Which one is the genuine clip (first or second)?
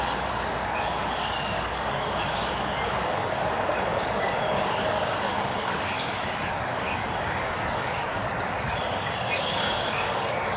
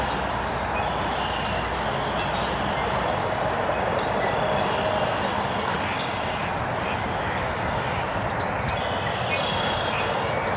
second